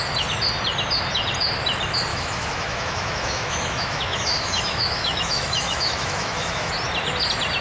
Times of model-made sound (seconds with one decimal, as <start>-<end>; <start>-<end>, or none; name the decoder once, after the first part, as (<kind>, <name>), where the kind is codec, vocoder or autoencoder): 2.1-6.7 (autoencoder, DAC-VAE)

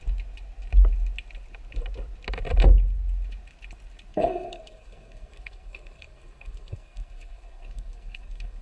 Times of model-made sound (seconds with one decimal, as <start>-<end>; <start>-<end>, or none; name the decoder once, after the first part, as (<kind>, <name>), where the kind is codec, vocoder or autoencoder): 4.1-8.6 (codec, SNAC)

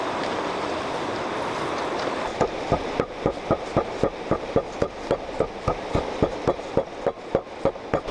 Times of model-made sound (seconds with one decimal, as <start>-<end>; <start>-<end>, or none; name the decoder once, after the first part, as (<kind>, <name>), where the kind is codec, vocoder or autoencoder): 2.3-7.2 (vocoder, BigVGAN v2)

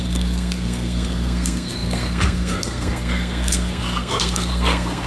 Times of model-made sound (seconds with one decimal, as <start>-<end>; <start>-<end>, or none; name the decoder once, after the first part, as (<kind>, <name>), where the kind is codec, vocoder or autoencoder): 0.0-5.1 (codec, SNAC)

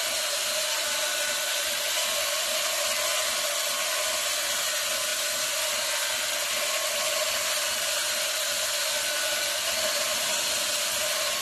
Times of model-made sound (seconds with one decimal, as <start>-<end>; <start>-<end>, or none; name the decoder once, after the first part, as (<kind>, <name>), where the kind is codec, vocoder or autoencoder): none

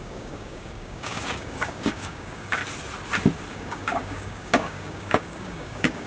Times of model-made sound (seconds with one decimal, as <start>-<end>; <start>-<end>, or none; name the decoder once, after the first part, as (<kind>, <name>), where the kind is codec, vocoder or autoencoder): 0.0-2.6 (codec, DAC); 3.5-6.1

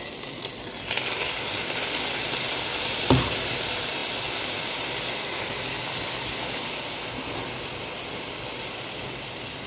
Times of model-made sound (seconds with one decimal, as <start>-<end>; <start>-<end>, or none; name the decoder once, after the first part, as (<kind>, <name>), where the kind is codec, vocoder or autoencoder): none